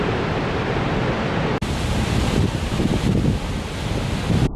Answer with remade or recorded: recorded